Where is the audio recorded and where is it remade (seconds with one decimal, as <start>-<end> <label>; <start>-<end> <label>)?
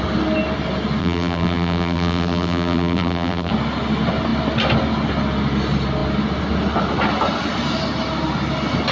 0.0-1.0 recorded; 1.0-3.5 remade; 3.5-8.9 recorded